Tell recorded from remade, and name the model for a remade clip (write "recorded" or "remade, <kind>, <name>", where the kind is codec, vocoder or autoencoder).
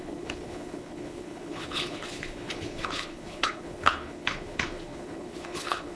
remade, codec, HILCodec